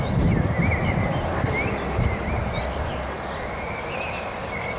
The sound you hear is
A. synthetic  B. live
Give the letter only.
B